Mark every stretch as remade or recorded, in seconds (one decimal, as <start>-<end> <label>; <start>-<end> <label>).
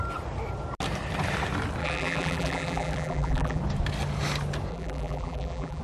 0.0-1.8 recorded; 1.8-3.6 remade; 3.6-4.7 recorded; 4.7-5.8 remade